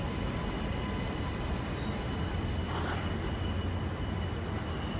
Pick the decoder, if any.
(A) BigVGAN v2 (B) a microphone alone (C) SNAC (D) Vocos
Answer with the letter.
B